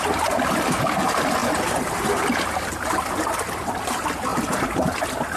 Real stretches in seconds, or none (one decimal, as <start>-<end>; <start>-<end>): 0.0-4.3; 4.9-5.4